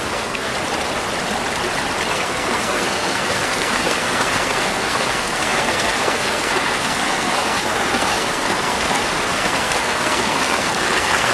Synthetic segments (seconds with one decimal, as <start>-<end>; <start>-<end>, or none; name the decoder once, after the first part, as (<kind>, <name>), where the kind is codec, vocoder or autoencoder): 0.0-0.5 (codec, SNAC); 2.1-11.3